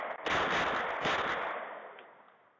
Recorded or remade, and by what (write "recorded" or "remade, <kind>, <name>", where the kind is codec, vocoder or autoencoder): recorded